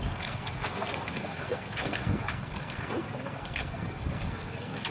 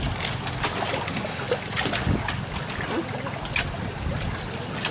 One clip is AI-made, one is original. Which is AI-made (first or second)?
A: first